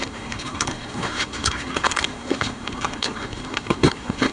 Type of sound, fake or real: fake